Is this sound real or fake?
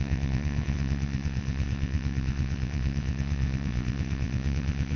fake